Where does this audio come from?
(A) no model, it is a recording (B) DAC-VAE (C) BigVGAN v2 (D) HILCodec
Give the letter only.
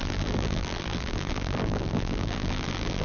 C